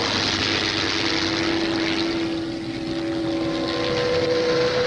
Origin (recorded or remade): recorded